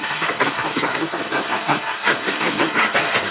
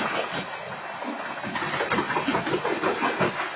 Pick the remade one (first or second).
first